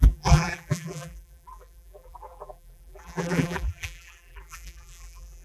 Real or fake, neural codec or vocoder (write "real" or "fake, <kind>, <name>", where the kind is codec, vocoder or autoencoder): fake, vocoder, BigVGAN v2